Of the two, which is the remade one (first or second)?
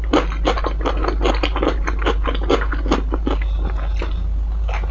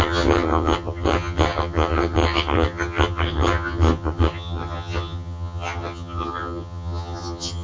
second